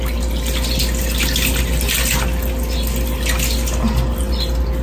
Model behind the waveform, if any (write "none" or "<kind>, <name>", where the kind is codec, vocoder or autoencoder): none